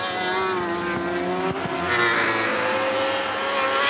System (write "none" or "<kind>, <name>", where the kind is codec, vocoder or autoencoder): none